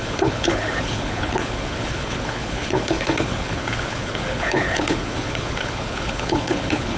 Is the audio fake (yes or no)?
yes